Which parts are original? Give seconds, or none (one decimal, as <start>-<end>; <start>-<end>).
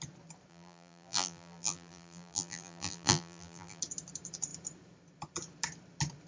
0.0-0.5; 3.8-6.3